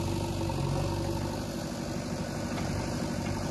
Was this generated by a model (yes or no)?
no